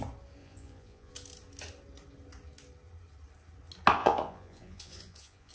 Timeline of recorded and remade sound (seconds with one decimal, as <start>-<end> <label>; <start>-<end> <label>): 0.0-0.4 recorded; 0.4-1.1 remade; 1.1-4.0 recorded; 4.0-5.5 remade